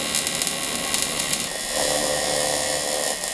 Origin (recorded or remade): recorded